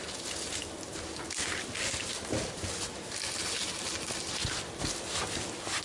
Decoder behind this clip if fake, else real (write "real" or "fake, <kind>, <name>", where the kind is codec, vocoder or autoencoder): real